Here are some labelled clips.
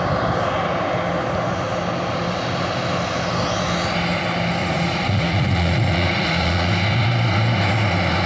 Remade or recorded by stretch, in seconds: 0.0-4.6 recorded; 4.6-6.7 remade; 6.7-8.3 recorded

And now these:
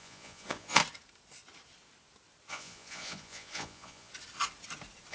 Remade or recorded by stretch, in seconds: 0.0-0.8 remade; 0.8-2.5 recorded; 2.5-4.1 remade; 4.1-5.1 recorded

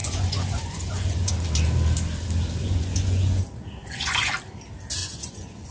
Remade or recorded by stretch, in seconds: 0.0-1.3 remade; 1.3-2.6 recorded; 2.6-3.4 remade; 3.4-3.8 recorded; 3.8-4.3 remade; 4.3-5.0 recorded; 5.0-5.7 remade